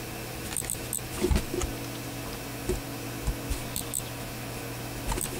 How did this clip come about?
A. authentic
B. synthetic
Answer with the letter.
A